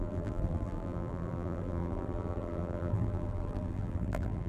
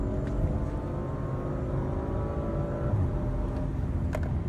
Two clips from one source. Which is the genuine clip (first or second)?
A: second